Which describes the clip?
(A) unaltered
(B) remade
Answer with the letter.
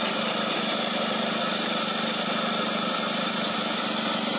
B